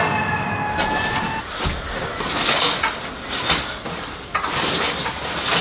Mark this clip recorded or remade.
recorded